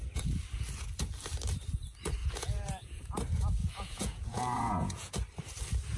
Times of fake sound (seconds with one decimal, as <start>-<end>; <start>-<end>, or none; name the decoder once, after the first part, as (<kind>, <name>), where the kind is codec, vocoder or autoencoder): 2.2-3.0 (vocoder, Vocos); 3.6-5.1